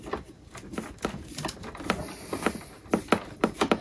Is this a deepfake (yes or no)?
no